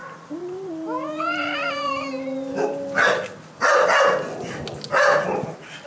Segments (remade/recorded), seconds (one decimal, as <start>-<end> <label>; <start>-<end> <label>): 0.0-2.1 remade; 2.1-5.9 recorded